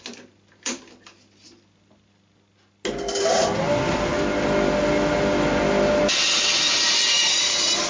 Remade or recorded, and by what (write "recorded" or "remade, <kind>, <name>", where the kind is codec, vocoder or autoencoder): recorded